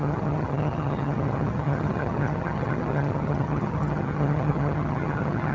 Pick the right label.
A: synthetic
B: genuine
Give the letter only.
A